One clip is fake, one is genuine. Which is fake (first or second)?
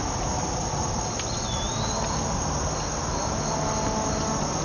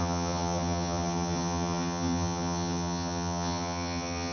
second